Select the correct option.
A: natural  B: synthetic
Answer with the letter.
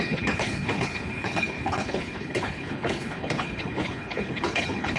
B